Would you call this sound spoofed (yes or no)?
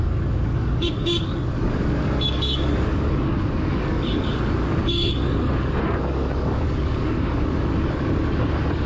yes